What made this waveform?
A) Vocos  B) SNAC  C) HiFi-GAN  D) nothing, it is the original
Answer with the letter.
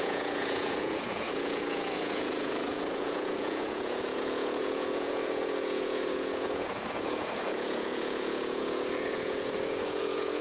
A